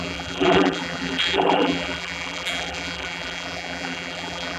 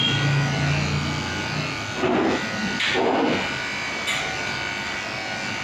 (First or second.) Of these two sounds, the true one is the second